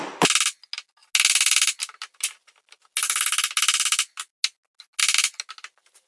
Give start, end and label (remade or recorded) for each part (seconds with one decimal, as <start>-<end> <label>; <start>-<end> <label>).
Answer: 0.0-6.1 recorded